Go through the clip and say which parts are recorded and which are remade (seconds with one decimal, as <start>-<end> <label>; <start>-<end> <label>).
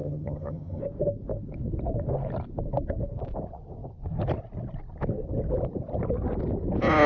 0.0-0.8 remade; 0.8-7.1 recorded